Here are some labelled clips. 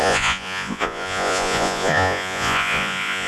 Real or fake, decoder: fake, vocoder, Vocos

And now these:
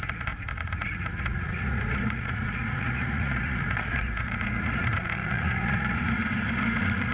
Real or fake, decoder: fake, vocoder, Vocos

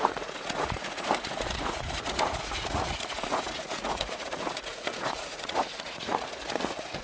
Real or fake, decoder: fake, vocoder, Vocos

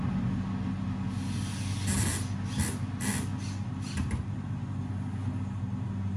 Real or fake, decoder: real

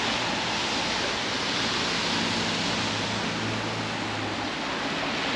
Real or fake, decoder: real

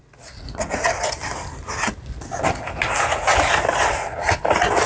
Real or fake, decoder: real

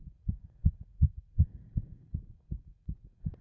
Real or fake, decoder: fake, vocoder, Vocos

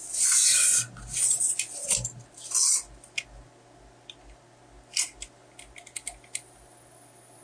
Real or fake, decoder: real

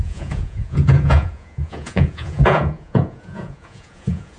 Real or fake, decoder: fake, vocoder, Vocos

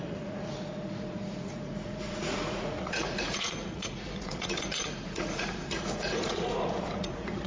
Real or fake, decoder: fake, vocoder, Vocos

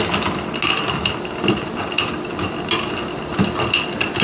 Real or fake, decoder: real